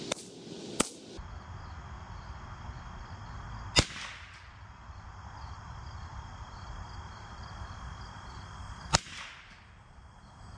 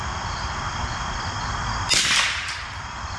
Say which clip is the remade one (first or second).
second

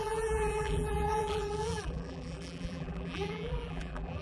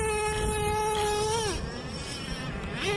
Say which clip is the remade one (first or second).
first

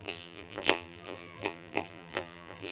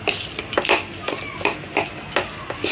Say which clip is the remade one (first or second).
first